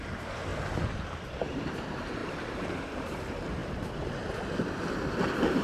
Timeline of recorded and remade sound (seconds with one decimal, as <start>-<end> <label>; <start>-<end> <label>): 0.0-0.5 remade; 0.5-1.4 recorded; 1.4-3.6 remade; 3.6-4.6 recorded; 4.6-5.6 remade